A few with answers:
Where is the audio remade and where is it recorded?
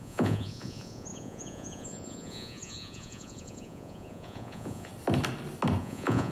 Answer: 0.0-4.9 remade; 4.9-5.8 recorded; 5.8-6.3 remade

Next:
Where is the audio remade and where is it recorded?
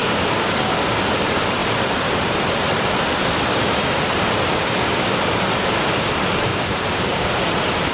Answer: 0.0-1.0 remade; 1.0-4.5 recorded; 4.5-5.3 remade; 5.3-6.5 recorded; 6.5-7.4 remade; 7.4-7.9 recorded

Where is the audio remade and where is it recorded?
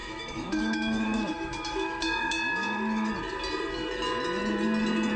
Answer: 0.0-3.1 remade; 3.1-5.2 recorded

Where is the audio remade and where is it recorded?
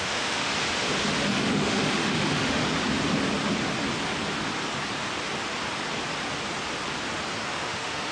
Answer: 0.0-0.5 remade; 0.5-1.3 recorded; 1.3-2.6 remade; 2.6-7.5 recorded; 7.5-8.1 remade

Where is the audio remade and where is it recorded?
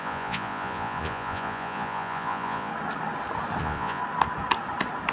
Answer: 0.0-2.7 remade; 2.7-3.6 recorded; 3.6-4.0 remade; 4.0-5.1 recorded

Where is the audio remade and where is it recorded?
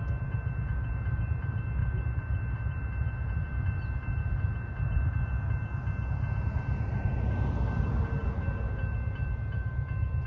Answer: 0.0-10.3 recorded